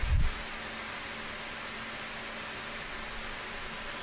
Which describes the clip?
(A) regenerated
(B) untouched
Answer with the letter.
B